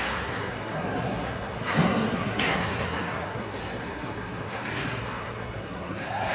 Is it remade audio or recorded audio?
remade